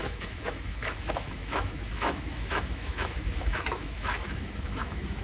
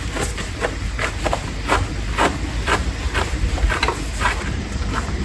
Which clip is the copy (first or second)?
first